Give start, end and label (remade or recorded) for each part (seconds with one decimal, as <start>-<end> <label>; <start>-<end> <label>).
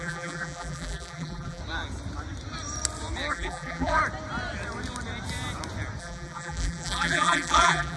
0.0-1.6 remade; 1.6-3.3 recorded; 3.3-4.0 remade; 4.0-6.0 recorded; 6.0-8.0 remade